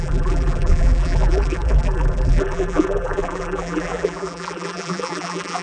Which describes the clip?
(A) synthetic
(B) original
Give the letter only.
A